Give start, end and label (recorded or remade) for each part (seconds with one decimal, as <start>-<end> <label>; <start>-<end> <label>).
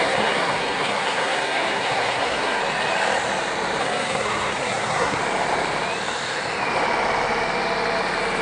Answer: 0.0-2.6 remade; 2.6-3.8 recorded; 3.8-5.2 remade; 5.2-8.4 recorded